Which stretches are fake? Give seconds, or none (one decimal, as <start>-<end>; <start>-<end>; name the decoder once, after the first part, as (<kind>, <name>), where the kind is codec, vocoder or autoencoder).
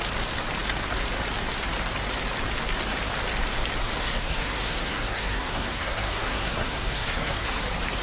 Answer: 4.0-7.6 (codec, SNAC)